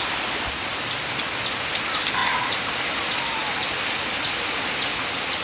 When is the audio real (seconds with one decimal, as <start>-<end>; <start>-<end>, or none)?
0.0-0.7; 1.2-2.2; 2.7-5.4